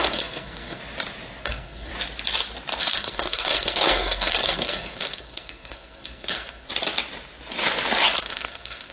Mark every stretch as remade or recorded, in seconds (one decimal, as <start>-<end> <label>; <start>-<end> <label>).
0.0-0.8 remade; 0.8-1.4 recorded; 1.4-1.9 remade; 1.9-2.8 recorded; 2.8-6.7 remade; 6.7-8.2 recorded; 8.2-8.9 remade